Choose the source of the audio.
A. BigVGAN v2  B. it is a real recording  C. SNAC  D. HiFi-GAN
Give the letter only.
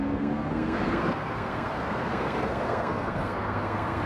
C